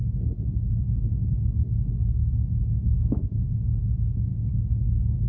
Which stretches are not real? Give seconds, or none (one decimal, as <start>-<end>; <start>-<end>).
0.0-4.3